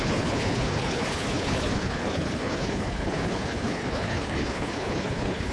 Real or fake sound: fake